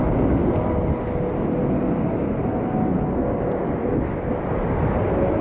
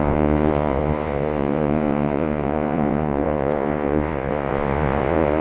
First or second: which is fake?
second